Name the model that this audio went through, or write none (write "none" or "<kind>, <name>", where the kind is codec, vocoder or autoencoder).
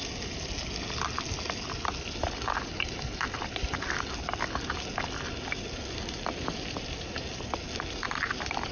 none